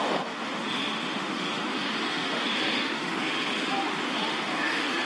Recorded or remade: remade